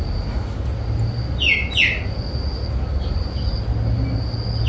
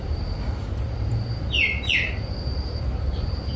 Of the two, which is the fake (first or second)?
second